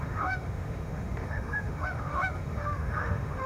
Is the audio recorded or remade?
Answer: remade